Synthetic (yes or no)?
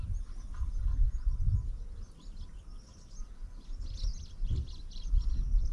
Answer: no